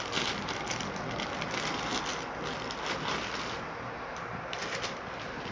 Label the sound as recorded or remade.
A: recorded